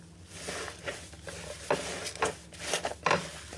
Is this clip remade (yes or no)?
no